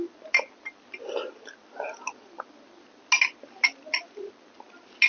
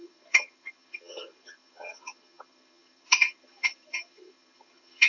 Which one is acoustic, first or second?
first